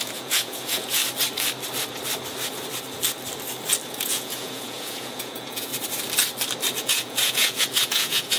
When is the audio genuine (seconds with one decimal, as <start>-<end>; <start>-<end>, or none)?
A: 1.0-3.9; 5.7-6.8